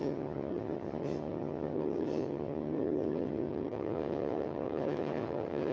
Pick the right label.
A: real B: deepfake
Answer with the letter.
B